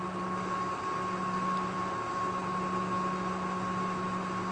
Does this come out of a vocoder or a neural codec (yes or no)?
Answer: no